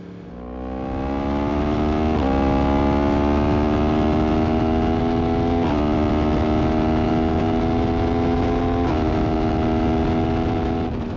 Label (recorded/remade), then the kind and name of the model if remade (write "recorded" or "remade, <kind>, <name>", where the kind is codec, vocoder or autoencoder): recorded